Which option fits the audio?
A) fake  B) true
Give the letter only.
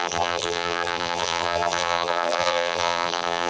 A